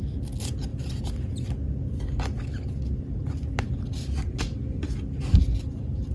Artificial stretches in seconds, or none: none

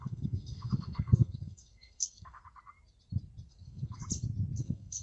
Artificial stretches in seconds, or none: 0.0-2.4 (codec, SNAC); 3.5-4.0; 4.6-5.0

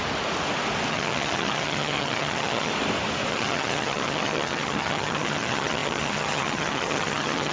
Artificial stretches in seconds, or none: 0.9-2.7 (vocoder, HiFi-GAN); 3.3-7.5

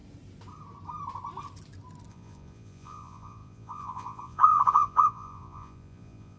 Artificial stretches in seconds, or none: 2.1-6.4 (vocoder, Vocos)

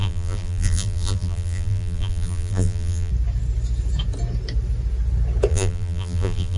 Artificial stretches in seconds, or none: 0.0-3.1 (vocoder, BigVGAN v2); 5.5-6.6

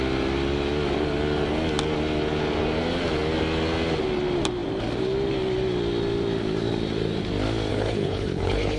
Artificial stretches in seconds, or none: 7.7-8.8 (codec, HILCodec)